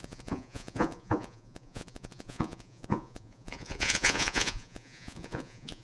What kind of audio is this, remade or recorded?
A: remade